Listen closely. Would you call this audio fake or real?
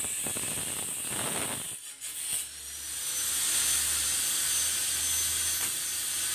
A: real